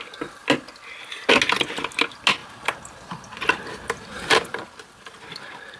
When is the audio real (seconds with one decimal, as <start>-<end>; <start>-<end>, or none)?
0.0-2.4